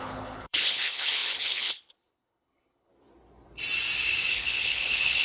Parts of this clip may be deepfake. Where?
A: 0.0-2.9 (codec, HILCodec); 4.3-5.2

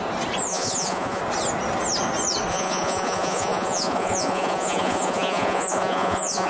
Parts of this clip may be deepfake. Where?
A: 0.5-1.2 (vocoder, Vocos); 2.5-6.5

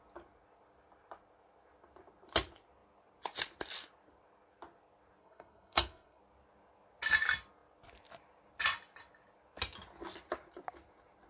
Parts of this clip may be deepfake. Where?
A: 5.2-6.2 (codec, SNAC)

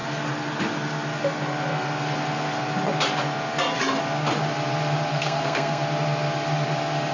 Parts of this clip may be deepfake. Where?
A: 5.1-5.8 (codec, SNAC)

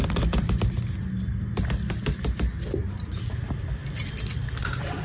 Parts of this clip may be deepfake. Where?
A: 2.8-3.3 (vocoder, BigVGAN v2)

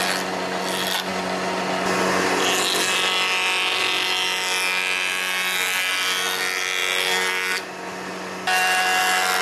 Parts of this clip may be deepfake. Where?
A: none

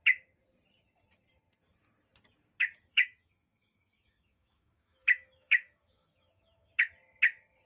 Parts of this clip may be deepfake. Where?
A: 2.9-6.7 (autoencoder, DAC-VAE)